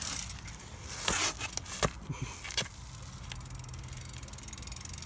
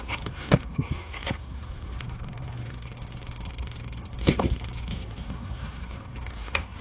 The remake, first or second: second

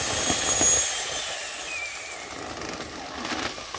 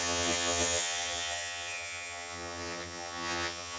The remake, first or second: second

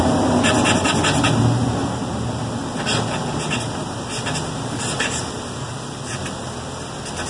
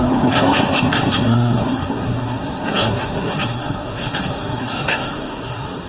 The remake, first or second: second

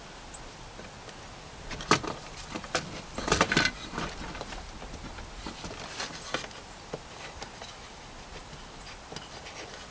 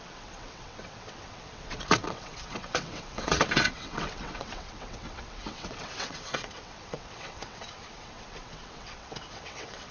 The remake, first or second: second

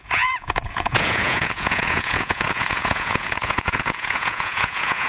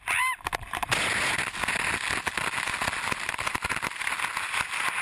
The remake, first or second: first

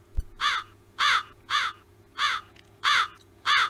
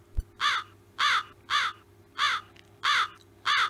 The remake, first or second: first